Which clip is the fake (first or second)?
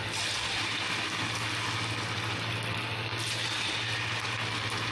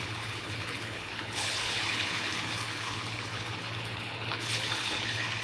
second